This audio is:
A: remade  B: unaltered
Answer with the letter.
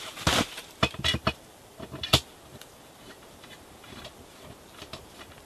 A